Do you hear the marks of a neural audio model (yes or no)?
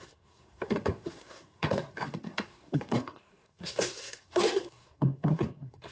yes